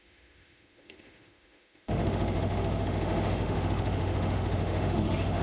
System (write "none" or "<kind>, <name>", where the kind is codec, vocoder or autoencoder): autoencoder, DAC-VAE